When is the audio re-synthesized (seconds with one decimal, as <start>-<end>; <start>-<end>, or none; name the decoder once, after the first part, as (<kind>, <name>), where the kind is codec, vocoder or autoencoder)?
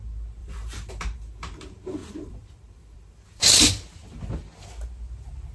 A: 0.4-0.9 (vocoder, BigVGAN v2); 2.0-3.7